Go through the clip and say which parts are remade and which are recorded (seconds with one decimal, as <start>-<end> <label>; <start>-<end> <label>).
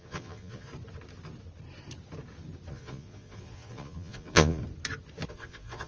0.0-0.7 remade; 0.7-2.7 recorded; 2.7-4.6 remade; 4.6-5.3 recorded; 5.3-5.9 remade